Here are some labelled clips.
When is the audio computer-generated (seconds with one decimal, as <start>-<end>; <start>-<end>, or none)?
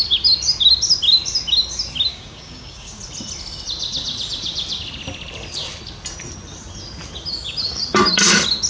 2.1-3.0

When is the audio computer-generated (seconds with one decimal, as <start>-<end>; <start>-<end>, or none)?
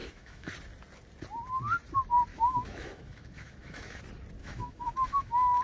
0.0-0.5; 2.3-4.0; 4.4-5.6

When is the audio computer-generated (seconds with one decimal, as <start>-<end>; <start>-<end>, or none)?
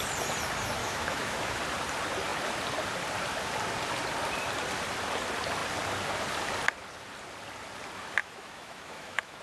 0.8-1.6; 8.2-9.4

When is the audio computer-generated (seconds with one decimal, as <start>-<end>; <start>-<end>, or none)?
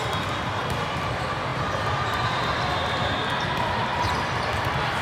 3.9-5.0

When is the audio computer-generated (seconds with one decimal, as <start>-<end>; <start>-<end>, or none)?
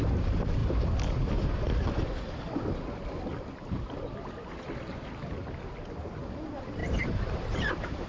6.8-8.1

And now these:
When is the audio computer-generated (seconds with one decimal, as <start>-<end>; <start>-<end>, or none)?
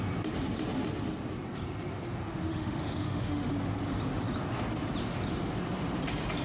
2.5-3.5